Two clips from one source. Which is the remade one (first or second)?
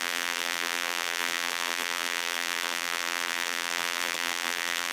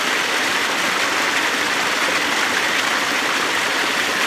first